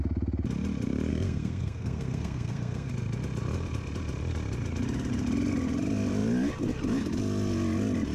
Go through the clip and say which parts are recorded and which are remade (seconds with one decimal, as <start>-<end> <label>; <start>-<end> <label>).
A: 0.0-1.1 recorded; 1.1-2.9 remade; 2.9-8.1 recorded